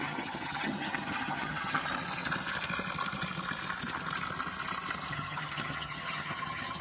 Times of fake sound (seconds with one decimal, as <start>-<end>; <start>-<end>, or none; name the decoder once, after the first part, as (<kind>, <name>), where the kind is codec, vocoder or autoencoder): 0.0-1.8 (vocoder, HiFi-GAN); 5.1-6.8